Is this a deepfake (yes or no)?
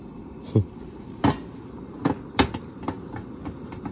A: no